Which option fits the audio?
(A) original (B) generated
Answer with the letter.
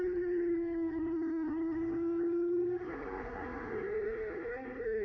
B